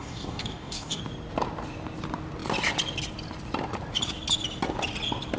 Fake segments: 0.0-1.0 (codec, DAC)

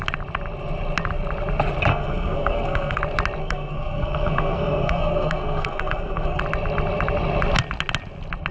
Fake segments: 1.9-3.0 (codec, SNAC); 3.4-6.4

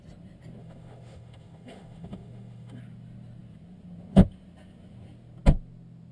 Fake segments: 0.6-2.8 (autoencoder, DAC-VAE)

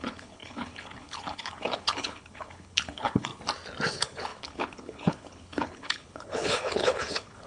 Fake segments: 0.0-3.3 (codec, HILCodec); 3.9-7.5

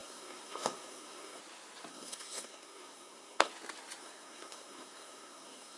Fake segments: 0.0-1.4 (codec, SNAC); 1.9-3.5; 4.0-5.8